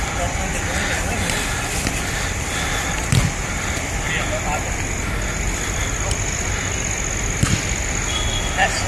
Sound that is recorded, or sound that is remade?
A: recorded